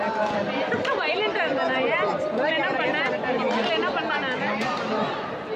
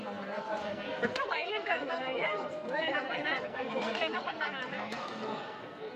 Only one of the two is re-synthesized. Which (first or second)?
second